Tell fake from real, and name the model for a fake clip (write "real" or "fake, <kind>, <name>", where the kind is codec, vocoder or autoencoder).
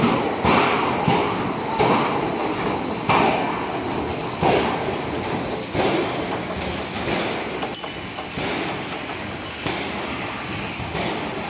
real